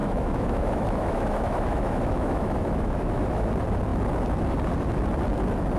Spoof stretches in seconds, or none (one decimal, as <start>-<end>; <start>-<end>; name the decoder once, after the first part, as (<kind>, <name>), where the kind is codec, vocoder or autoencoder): 0.0-3.5 (autoencoder, DAC-VAE)